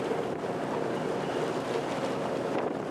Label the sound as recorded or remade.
recorded